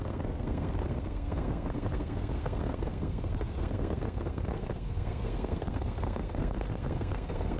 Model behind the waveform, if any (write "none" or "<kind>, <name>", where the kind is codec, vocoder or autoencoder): codec, SNAC